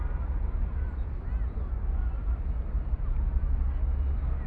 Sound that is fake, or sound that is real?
real